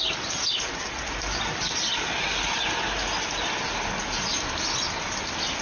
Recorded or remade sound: recorded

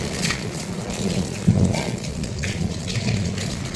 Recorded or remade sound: remade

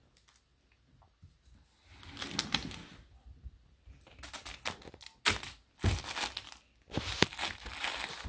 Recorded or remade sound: recorded